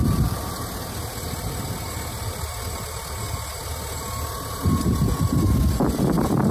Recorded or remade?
recorded